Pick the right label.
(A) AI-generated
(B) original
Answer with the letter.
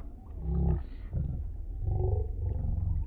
B